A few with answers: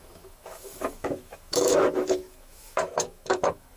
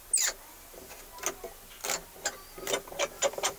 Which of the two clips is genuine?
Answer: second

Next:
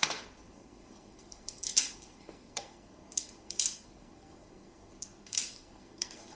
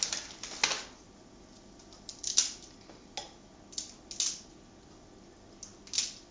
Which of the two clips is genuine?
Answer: second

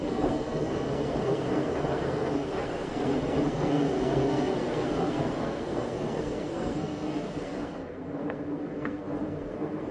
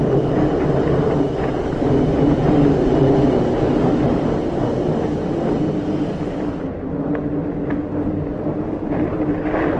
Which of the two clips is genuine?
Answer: second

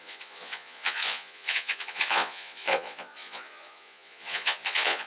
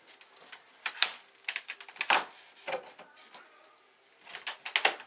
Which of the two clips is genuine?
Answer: second